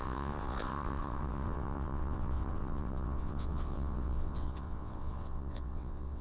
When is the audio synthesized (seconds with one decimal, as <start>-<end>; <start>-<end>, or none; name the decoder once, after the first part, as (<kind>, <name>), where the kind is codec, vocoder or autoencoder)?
0.0-6.2 (vocoder, WaveNeXt)